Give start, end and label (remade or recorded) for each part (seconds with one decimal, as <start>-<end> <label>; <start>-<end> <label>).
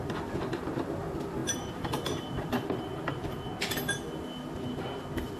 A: 0.0-1.4 recorded; 1.4-3.1 remade; 3.1-5.4 recorded